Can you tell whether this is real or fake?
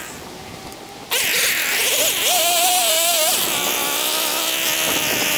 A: real